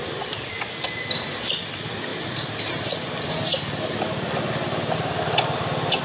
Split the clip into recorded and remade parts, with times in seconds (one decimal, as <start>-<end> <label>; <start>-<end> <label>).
0.0-6.0 recorded